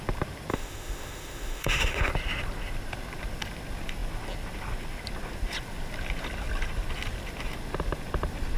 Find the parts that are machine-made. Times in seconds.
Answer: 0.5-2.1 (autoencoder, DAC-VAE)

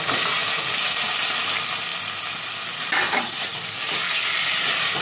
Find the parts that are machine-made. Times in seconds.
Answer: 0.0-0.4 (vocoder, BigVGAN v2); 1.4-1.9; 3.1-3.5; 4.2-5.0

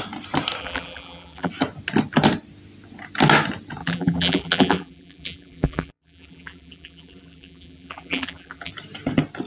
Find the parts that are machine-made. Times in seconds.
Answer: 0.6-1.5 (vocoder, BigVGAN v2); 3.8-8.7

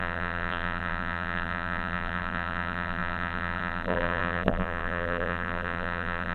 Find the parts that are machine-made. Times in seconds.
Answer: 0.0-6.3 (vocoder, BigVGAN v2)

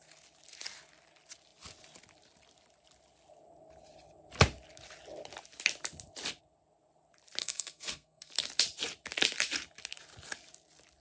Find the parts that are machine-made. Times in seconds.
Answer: 7.4-8.3 (codec, SNAC)

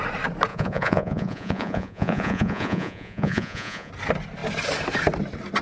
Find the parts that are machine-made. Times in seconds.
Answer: 0.5-3.9 (vocoder, Vocos)

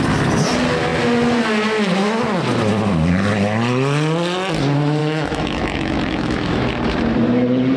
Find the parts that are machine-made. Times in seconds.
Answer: 5.0-6.6 (autoencoder, DAC-VAE)